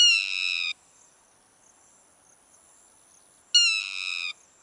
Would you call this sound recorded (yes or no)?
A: yes